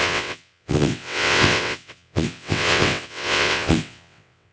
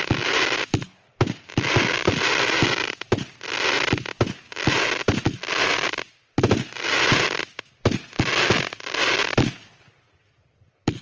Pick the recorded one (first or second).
second